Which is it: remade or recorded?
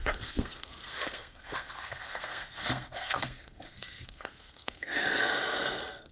remade